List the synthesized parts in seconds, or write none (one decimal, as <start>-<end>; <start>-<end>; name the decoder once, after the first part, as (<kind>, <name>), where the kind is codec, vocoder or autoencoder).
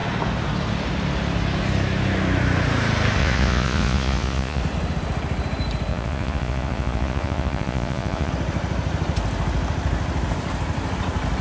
3.2-4.6 (vocoder, Vocos); 5.9-8.3